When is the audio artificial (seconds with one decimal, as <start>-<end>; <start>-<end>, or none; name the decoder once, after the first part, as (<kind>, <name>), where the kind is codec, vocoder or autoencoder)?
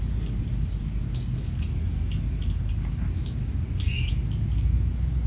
3.6-4.1 (vocoder, Vocos)